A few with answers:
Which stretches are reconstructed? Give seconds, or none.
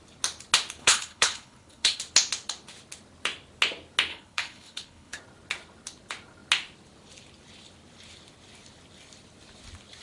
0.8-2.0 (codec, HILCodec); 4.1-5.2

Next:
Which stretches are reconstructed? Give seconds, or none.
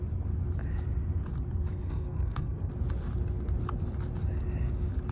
1.7-2.7 (codec, SNAC)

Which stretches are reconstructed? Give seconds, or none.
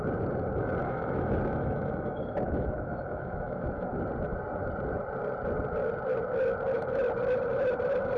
0.8-4.0 (autoencoder, DAC-VAE)